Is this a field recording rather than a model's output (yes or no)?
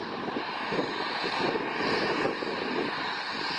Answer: yes